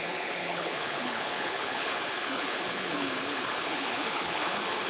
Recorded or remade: remade